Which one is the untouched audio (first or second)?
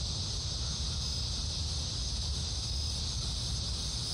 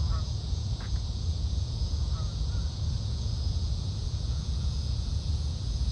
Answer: first